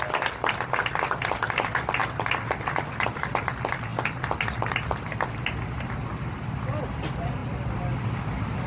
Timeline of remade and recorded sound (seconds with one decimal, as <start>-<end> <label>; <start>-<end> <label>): 0.0-8.7 recorded